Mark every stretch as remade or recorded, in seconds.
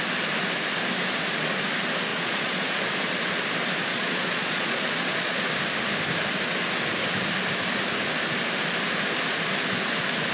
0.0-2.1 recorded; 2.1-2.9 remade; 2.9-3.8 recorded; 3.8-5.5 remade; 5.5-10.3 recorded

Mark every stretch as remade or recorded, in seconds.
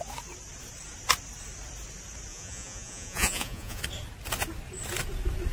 0.0-2.3 recorded; 2.3-3.8 remade; 3.8-5.5 recorded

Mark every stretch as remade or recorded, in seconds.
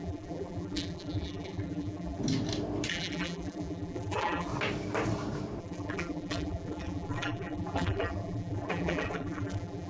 0.0-2.2 remade; 2.2-2.9 recorded; 2.9-4.5 remade; 4.5-5.6 recorded; 5.6-9.9 remade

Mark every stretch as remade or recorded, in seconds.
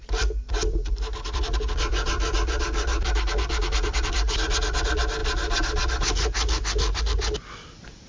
0.0-8.1 recorded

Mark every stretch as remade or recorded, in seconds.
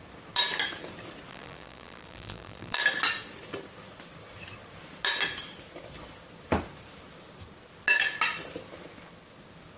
0.0-1.3 recorded; 1.3-2.8 remade; 2.8-9.8 recorded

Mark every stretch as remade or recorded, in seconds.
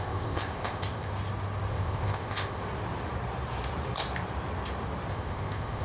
0.0-1.1 remade; 1.1-1.7 recorded; 1.7-2.6 remade; 2.6-5.1 recorded; 5.1-5.8 remade